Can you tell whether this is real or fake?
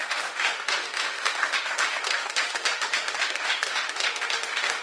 fake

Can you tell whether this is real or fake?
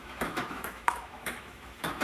fake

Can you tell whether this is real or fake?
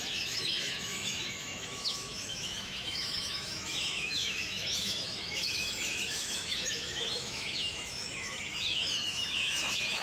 fake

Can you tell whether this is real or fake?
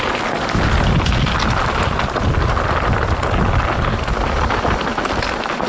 real